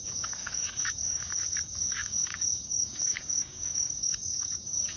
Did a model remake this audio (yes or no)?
yes